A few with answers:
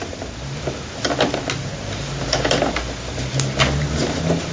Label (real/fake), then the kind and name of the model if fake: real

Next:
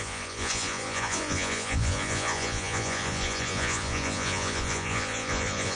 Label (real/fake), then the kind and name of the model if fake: fake, vocoder, Vocos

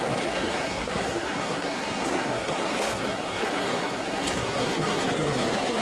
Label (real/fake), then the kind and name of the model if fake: fake, codec, SNAC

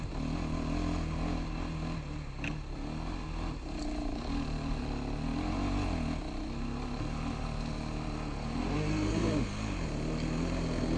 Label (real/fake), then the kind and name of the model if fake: real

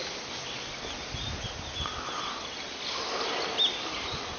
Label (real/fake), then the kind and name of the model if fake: real